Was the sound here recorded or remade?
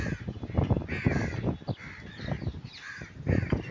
recorded